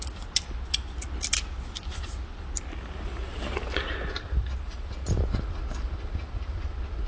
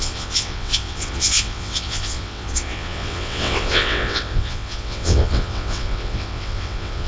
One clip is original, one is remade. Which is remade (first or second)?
second